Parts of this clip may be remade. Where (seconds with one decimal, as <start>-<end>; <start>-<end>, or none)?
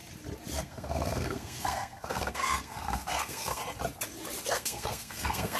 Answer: 0.6-3.6; 4.5-5.6